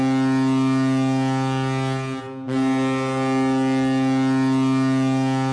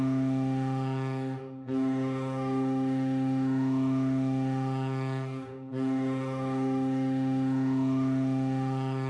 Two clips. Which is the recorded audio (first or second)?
first